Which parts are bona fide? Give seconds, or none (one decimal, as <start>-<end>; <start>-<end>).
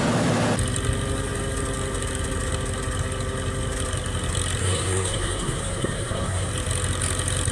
0.0-4.6; 6.5-7.5